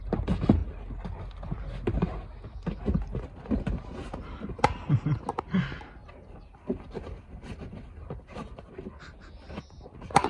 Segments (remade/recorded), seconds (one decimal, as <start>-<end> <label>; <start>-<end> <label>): 0.0-6.0 recorded; 6.0-8.7 remade; 8.7-10.3 recorded